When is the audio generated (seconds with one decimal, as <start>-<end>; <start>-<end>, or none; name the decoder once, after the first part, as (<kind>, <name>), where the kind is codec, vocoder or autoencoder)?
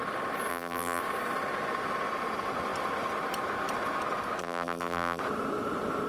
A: 0.5-1.0 (vocoder, BigVGAN v2); 4.4-5.2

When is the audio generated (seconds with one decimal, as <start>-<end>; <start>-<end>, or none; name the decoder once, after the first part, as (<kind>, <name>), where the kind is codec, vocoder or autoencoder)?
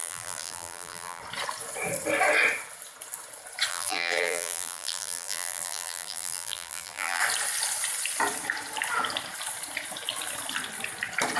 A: 0.0-1.2 (vocoder, BigVGAN v2); 3.7-7.2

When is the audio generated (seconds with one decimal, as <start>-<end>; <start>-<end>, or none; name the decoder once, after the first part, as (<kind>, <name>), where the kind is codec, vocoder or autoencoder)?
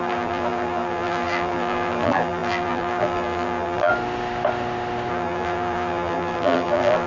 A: 0.0-3.9 (vocoder, BigVGAN v2); 5.1-7.1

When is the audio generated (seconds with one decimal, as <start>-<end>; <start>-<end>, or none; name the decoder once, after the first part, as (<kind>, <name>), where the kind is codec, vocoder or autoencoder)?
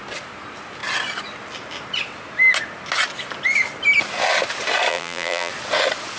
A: 4.9-5.5 (vocoder, BigVGAN v2)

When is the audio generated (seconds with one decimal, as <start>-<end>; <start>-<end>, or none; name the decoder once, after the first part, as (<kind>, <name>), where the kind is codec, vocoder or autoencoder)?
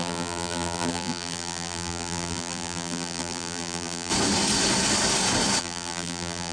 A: 0.0-4.1 (vocoder, BigVGAN v2); 5.6-6.5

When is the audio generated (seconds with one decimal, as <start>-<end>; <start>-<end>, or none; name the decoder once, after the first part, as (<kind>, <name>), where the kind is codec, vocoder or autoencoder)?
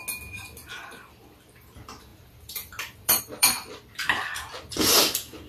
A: 1.1-5.5 (vocoder, BigVGAN v2)